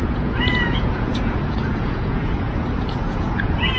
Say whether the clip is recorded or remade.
remade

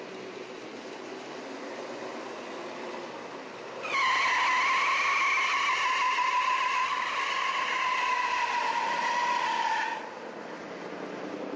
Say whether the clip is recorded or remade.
recorded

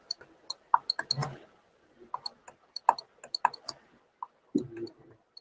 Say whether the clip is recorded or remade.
recorded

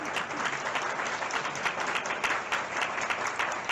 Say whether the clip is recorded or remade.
recorded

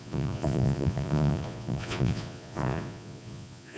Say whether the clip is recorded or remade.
remade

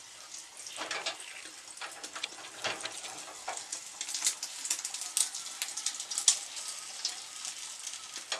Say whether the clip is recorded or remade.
recorded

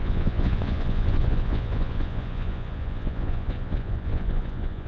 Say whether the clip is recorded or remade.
remade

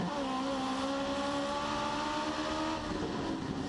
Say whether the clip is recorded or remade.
recorded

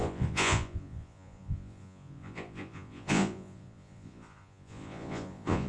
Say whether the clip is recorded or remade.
remade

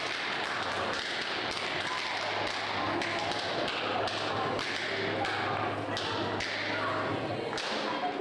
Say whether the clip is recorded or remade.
recorded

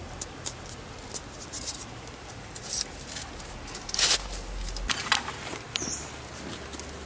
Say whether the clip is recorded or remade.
recorded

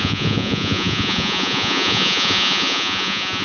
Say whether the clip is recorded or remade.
remade